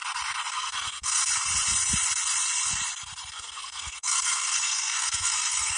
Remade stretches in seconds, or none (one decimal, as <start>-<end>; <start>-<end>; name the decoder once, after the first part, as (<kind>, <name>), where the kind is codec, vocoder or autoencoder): 0.5-1.2 (codec, SNAC); 3.3-5.8